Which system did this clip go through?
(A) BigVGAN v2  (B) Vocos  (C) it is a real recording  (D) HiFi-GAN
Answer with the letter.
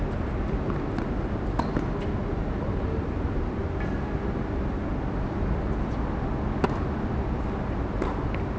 C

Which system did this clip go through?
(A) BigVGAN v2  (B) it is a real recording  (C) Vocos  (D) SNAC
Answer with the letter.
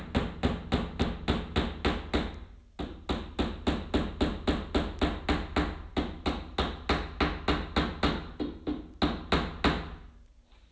B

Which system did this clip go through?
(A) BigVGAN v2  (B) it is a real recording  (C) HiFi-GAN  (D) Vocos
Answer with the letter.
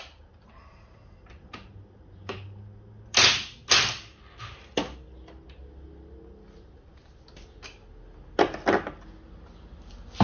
B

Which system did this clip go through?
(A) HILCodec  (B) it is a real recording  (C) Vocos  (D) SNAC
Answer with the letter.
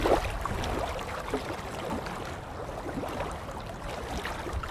B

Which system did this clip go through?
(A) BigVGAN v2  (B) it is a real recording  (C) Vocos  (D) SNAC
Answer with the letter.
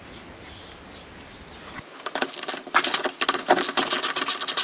B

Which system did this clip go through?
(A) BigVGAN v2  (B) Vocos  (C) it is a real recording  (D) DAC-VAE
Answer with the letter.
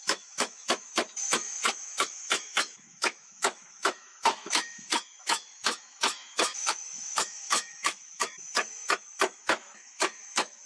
D